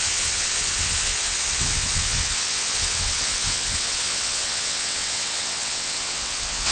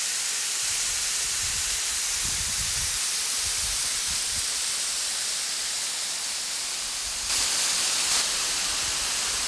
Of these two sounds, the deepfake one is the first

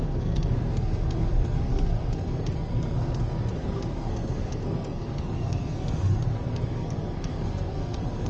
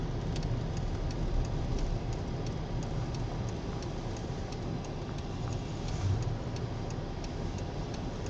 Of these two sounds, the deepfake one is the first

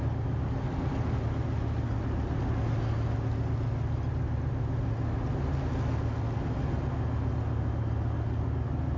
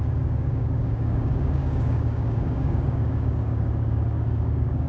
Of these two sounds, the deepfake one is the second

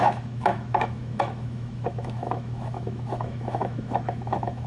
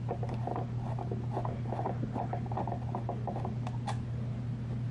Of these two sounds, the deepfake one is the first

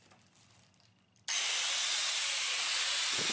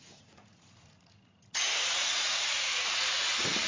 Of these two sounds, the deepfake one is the second